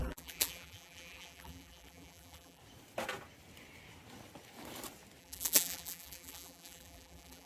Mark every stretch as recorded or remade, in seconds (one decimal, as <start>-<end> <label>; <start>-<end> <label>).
0.0-2.6 remade; 2.6-5.2 recorded; 5.2-7.5 remade

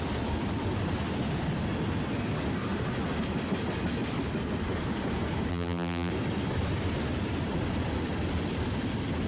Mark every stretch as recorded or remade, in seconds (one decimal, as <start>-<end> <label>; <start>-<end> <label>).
0.0-5.5 recorded; 5.5-6.1 remade; 6.1-9.3 recorded